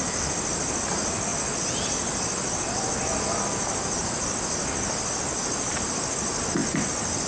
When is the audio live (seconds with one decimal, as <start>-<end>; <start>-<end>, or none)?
0.0-7.3